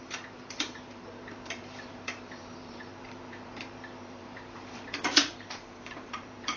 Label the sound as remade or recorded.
remade